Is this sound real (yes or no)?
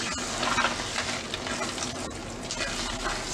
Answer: yes